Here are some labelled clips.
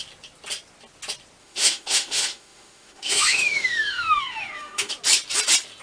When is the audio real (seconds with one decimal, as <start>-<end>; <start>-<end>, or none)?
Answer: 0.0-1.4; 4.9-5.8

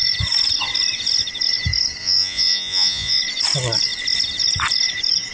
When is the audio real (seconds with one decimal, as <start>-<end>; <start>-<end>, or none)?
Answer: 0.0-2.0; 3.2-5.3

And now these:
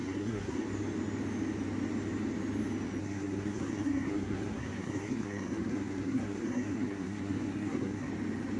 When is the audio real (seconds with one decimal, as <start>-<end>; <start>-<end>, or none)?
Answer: 0.7-3.0; 8.1-8.6

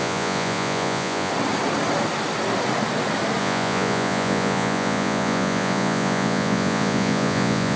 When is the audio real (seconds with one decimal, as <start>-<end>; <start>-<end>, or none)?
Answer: 1.3-3.4